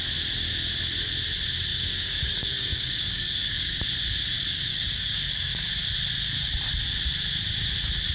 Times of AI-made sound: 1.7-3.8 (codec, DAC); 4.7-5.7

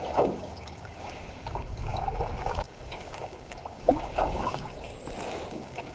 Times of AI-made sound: 0.0-4.9 (codec, DAC); 5.5-5.9

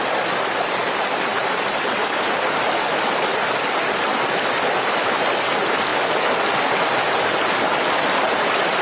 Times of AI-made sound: none